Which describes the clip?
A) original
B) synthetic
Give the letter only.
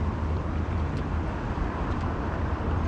B